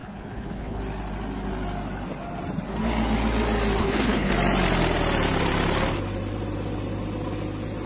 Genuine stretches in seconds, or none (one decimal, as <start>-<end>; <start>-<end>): 0.8-3.8; 4.3-7.9